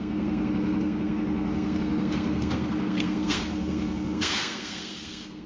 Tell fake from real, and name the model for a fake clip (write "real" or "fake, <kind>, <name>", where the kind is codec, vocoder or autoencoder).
fake, codec, SNAC